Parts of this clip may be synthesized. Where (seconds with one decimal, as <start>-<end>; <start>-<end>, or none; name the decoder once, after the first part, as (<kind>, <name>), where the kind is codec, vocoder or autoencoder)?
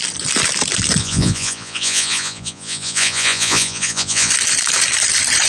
1.0-4.3 (vocoder, Vocos)